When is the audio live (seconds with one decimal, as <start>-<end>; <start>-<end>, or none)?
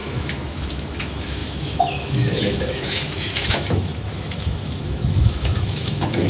none